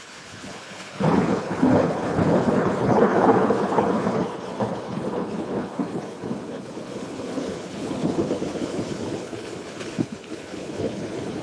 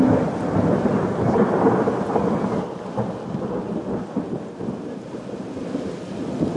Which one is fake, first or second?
first